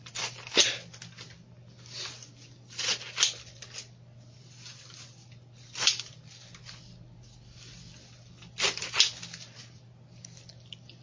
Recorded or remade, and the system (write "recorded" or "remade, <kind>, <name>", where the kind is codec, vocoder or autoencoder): recorded